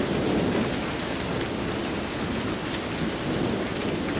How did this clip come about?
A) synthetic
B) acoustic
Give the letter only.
B